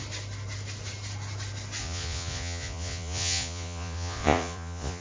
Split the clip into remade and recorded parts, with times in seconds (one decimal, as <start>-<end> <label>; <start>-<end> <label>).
0.0-1.8 recorded; 1.8-5.0 remade